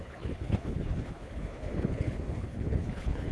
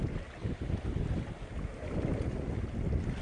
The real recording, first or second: second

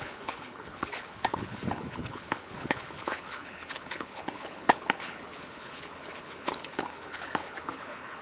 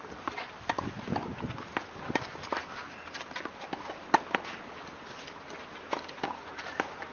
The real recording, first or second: second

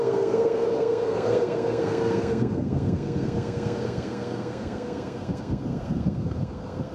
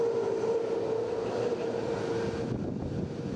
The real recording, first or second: second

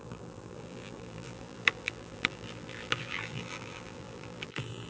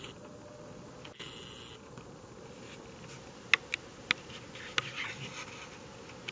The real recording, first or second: second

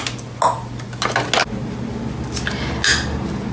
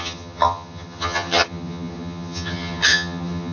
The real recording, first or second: first